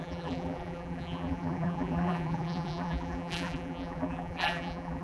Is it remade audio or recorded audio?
remade